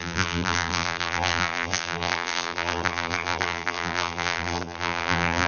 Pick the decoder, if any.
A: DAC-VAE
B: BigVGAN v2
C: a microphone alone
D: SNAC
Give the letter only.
B